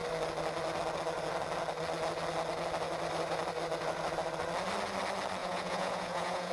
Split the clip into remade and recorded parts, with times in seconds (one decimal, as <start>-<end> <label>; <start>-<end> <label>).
0.0-5.4 recorded; 5.4-6.5 remade